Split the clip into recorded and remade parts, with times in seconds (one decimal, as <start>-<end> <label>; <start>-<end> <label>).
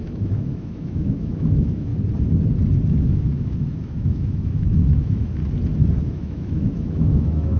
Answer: 0.0-1.9 remade; 1.9-3.1 recorded; 3.1-5.4 remade; 5.4-6.0 recorded; 6.0-7.6 remade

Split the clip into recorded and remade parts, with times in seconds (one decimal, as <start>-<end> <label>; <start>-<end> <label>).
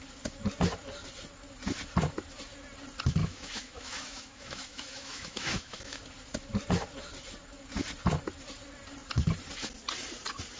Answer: 0.0-3.2 recorded; 3.2-6.0 remade; 6.0-10.6 recorded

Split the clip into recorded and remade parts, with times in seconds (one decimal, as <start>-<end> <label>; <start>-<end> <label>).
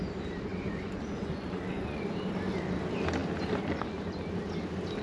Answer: 0.0-0.5 recorded; 0.5-2.0 remade; 2.0-5.0 recorded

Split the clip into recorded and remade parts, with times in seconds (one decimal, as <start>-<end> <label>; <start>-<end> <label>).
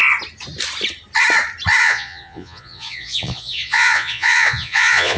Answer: 0.0-1.8 recorded; 1.8-5.2 remade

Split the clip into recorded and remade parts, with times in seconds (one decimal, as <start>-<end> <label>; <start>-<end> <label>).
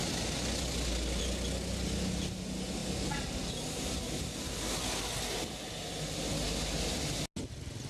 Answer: 0.0-7.9 recorded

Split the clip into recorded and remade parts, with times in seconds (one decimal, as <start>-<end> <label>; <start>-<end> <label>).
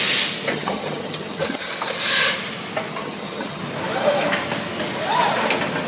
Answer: 0.0-0.5 recorded; 0.5-1.7 remade; 1.7-2.9 recorded; 2.9-3.6 remade; 3.6-5.9 recorded